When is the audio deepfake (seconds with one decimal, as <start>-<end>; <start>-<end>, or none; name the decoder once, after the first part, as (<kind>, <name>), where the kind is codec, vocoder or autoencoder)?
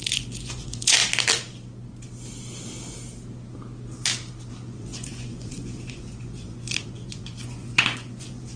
0.0-1.0 (vocoder, Vocos); 4.5-8.6